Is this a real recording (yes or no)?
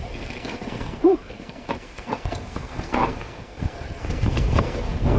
no